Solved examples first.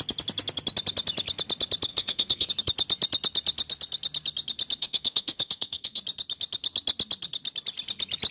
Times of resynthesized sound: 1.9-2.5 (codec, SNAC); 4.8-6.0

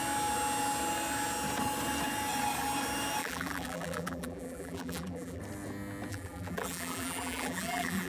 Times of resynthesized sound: 3.2-5.4 (vocoder, BigVGAN v2); 6.1-8.1